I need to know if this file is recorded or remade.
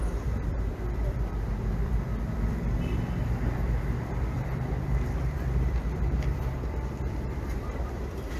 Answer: remade